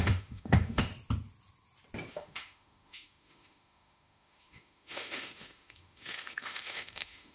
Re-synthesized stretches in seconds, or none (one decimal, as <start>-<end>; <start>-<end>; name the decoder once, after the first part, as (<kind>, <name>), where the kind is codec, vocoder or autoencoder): 0.0-0.9 (autoencoder, DAC-VAE); 2.1-7.3

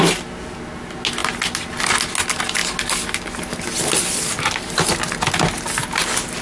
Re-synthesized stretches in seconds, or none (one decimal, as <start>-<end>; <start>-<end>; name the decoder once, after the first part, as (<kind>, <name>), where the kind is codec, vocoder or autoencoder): none

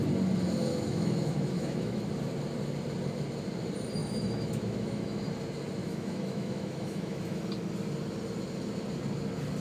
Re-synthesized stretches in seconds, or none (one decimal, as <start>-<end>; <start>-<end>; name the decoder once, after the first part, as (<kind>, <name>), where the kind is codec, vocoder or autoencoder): 0.7-2.1 (autoencoder, DAC-VAE); 4.0-5.2; 5.8-7.4